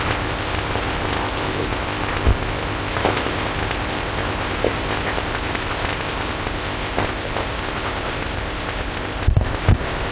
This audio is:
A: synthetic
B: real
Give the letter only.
A